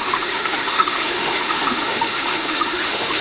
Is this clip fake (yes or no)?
yes